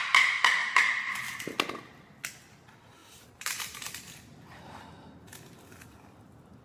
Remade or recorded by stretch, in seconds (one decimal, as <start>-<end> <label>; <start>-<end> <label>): 0.0-0.6 recorded; 0.6-1.4 remade; 1.4-3.0 recorded; 3.0-4.1 remade; 4.1-6.6 recorded